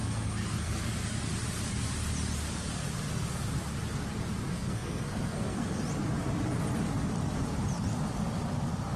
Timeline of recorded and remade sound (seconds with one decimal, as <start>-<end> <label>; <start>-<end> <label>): 0.0-0.9 remade; 0.9-4.5 recorded; 4.5-5.8 remade; 5.8-9.0 recorded